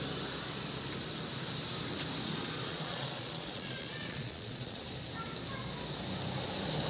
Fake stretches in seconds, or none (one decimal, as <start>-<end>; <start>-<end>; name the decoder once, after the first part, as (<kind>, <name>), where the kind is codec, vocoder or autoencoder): 2.7-4.8 (vocoder, Vocos)